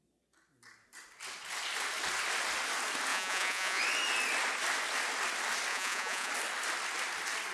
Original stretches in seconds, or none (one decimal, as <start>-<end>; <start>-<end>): 0.0-3.1; 3.8-5.7; 6.3-7.5